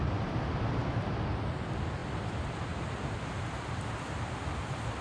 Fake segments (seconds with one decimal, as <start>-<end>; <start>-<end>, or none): none